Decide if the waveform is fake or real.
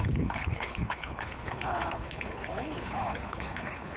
fake